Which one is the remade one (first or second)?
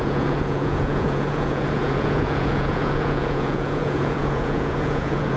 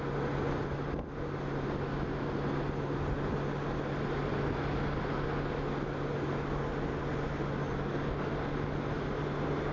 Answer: first